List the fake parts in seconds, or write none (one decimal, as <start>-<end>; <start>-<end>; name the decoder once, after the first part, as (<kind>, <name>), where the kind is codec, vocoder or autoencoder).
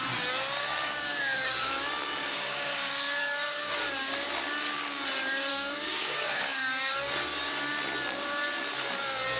0.6-1.2 (codec, DAC); 2.2-3.2; 5.5-6.9